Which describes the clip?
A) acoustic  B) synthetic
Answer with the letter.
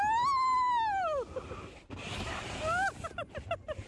A